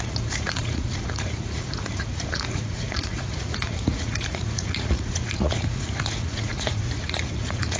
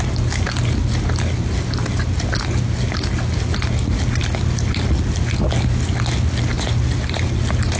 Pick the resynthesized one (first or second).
first